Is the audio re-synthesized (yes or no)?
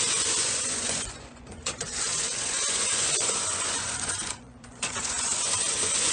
yes